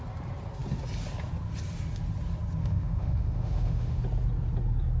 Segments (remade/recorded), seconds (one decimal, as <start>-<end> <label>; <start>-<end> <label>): 0.0-2.6 recorded; 2.6-4.0 remade; 4.0-5.0 recorded